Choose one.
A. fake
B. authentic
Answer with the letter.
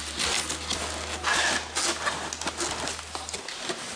B